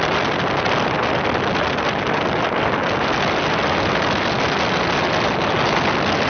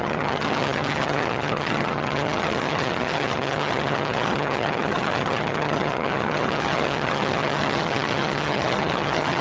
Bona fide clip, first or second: first